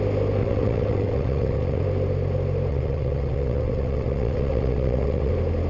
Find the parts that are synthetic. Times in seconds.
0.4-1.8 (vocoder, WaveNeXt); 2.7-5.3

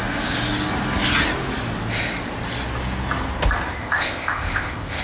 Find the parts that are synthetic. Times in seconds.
3.8-5.0 (codec, ZipCodec)

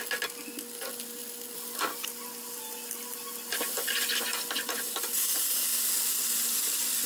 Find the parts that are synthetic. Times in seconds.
none

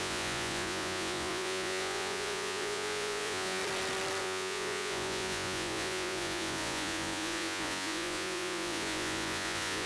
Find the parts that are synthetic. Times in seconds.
0.0-3.6 (vocoder, Vocos); 4.2-9.9

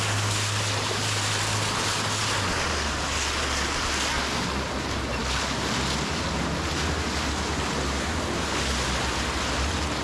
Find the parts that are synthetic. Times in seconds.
none

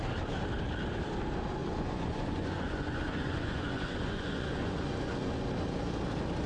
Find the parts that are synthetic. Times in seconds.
1.6-5.5 (vocoder, Vocos)

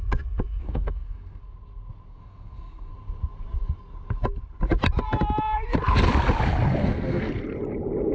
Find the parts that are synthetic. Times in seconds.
0.6-1.4 (codec, SNAC); 2.1-2.9; 6.8-7.3